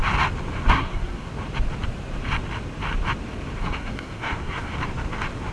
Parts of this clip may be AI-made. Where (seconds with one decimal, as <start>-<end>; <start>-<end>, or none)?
0.7-1.3; 3.6-4.7